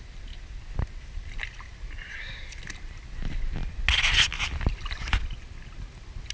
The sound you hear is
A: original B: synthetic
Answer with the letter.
A